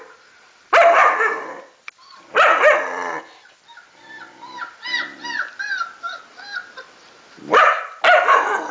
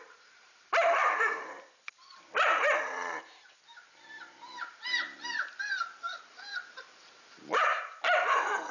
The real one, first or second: first